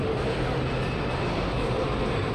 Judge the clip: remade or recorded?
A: recorded